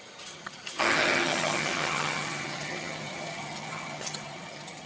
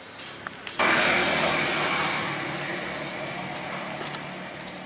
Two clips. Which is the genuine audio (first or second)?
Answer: second